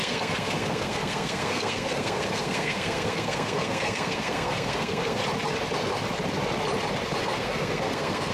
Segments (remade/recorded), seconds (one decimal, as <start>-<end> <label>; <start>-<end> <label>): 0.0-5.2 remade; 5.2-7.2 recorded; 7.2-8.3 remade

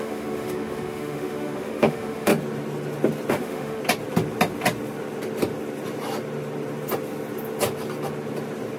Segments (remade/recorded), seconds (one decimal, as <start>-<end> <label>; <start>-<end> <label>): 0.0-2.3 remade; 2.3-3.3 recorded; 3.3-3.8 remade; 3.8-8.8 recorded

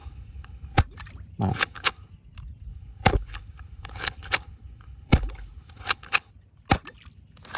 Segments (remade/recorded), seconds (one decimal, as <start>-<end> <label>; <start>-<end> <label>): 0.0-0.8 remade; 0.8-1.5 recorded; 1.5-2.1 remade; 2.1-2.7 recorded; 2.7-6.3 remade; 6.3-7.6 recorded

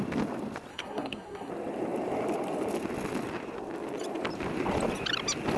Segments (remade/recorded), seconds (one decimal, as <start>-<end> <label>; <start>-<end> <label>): 0.0-0.7 recorded; 0.7-1.5 remade; 1.5-5.6 recorded

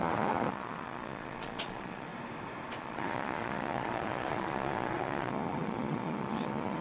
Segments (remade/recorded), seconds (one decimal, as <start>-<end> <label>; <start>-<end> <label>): 0.0-2.1 remade; 2.1-2.8 recorded; 2.8-6.8 remade